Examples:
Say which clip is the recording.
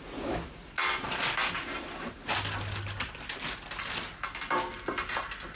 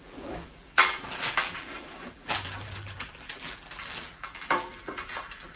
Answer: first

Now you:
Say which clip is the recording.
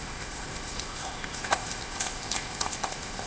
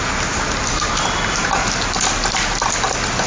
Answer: second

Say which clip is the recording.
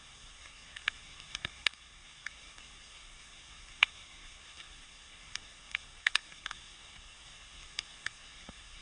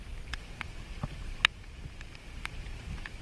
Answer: second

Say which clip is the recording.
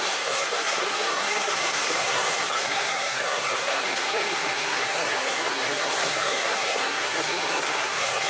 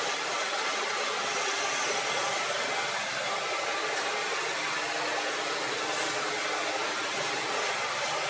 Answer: second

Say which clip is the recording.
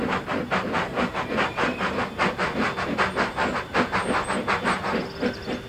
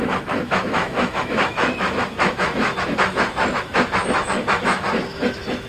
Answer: first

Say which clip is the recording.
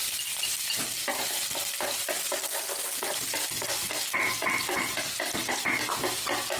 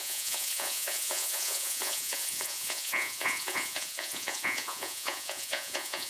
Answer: first